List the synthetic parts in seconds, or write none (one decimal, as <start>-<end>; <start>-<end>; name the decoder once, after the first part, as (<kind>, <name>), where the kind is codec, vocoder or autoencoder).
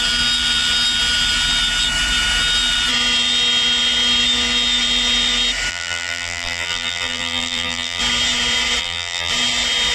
5.7-8.0 (vocoder, BigVGAN v2); 8.8-9.3